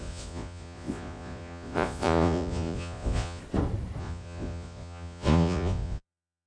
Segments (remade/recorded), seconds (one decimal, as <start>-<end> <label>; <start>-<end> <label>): 0.0-3.4 remade; 3.4-4.0 recorded; 4.0-6.5 remade